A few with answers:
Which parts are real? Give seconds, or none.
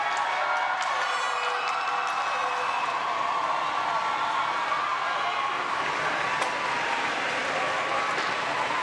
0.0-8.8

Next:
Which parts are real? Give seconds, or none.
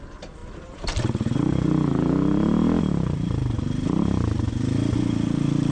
0.0-5.7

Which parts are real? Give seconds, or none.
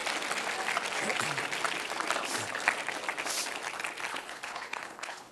0.0-4.1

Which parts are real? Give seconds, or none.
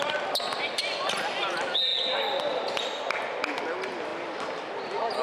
0.0-5.2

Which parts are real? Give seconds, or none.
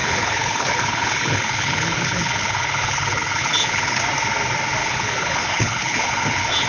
4.0-4.8